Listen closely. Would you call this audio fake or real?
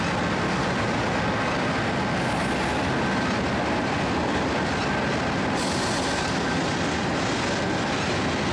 real